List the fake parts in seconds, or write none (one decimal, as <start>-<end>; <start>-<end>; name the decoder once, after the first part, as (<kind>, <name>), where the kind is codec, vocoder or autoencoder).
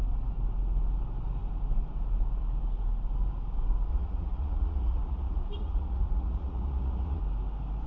3.9-7.2 (vocoder, Vocos)